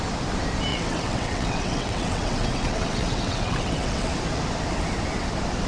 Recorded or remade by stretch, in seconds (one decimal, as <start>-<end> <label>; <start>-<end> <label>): 0.0-0.7 recorded; 0.7-4.1 remade; 4.1-5.7 recorded